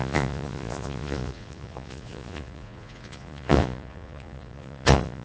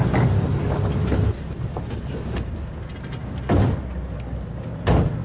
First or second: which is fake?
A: first